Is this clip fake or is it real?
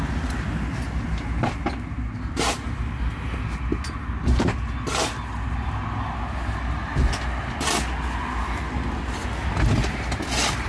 real